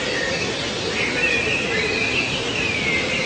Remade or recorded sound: recorded